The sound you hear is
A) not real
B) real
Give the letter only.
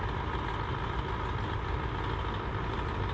B